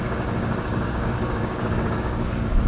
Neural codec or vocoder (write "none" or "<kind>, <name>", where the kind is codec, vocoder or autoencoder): codec, DAC